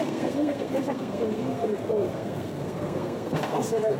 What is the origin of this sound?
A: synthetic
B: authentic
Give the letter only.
A